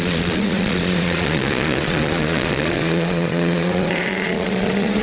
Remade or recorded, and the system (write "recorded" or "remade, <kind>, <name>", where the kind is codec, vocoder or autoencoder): remade, vocoder, Vocos